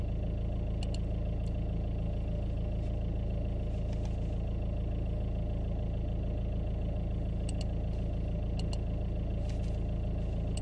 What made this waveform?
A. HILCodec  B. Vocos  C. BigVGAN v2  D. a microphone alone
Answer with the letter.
D